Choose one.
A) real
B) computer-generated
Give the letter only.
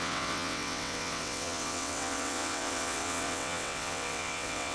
B